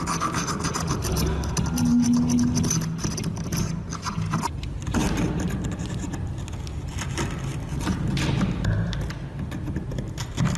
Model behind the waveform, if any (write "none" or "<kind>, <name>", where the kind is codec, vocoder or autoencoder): none